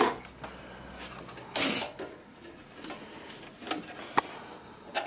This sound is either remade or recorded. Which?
recorded